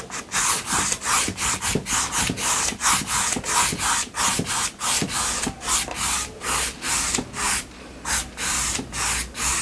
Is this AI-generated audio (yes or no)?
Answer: no